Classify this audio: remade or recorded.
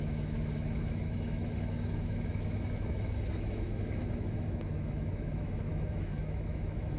remade